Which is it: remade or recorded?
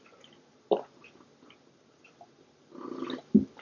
recorded